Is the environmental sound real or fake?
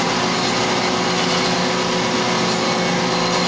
real